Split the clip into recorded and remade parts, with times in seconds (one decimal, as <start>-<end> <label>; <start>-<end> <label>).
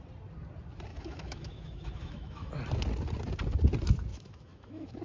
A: 0.0-0.9 recorded; 0.9-2.5 remade; 2.5-4.1 recorded; 4.1-5.0 remade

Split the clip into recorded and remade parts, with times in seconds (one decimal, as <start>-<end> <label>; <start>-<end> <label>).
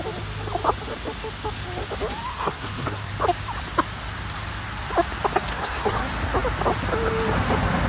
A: 0.0-2.3 recorded; 2.3-3.1 remade; 3.1-5.5 recorded; 5.5-6.0 remade; 6.0-7.9 recorded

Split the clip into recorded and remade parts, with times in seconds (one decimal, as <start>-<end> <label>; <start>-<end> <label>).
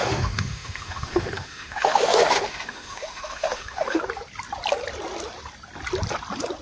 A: 0.0-4.0 remade; 4.0-6.6 recorded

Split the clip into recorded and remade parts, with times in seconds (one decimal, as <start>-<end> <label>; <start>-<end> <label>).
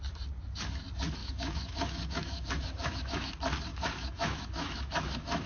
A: 0.0-1.2 recorded; 1.2-3.3 remade; 3.3-3.7 recorded; 3.7-5.5 remade